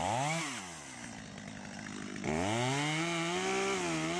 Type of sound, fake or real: real